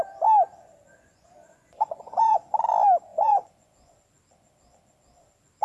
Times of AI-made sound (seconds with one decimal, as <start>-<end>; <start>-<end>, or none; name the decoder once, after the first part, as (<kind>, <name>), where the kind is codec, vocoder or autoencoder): 0.9-2.7 (vocoder, Vocos); 3.1-3.9